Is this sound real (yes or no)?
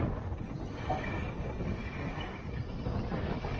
yes